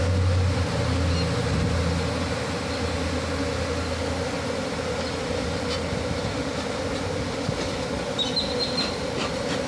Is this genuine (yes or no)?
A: yes